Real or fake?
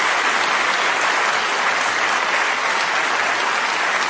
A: real